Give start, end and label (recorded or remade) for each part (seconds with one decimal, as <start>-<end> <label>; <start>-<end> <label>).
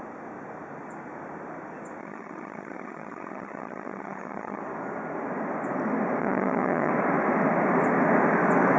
0.0-2.0 recorded; 2.0-4.6 remade; 4.6-6.2 recorded; 6.2-6.9 remade; 6.9-8.8 recorded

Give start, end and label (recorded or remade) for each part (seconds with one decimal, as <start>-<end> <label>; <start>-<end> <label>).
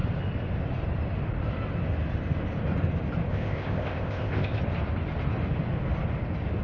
0.0-3.3 recorded; 3.3-4.6 remade; 4.6-6.6 recorded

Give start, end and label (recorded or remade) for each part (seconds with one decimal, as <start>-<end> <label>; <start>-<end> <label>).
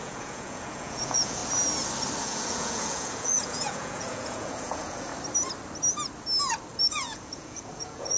0.0-1.4 remade; 1.4-2.2 recorded; 2.2-5.1 remade; 5.1-6.9 recorded; 6.9-8.2 remade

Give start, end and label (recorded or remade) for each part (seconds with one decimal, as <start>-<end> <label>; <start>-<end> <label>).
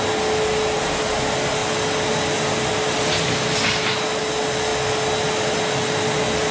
0.0-6.5 recorded